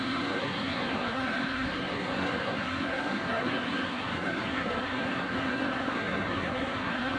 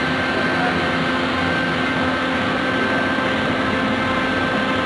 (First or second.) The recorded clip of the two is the second